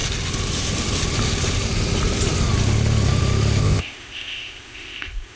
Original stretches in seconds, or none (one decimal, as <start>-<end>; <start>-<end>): 0.0-3.6